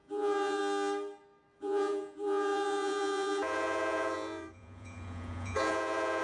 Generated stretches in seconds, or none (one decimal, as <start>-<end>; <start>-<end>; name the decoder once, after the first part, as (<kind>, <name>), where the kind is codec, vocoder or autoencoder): 0.0-0.6 (vocoder, Vocos); 1.6-6.2